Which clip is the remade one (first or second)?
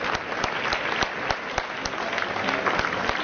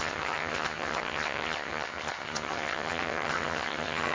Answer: second